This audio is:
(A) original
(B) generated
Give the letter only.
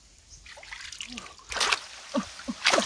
A